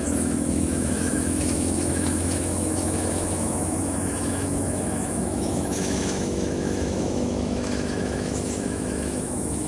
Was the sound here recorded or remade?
remade